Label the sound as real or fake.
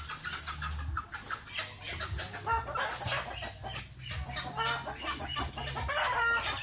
real